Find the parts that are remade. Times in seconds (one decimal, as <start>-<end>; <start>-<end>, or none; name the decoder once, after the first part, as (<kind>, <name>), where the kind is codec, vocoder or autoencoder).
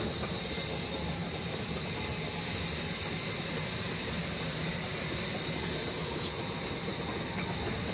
none